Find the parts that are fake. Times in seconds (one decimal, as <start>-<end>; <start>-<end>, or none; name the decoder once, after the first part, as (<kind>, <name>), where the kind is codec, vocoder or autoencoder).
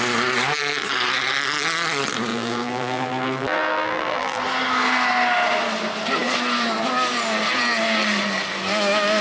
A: 2.3-4.4 (vocoder, BigVGAN v2)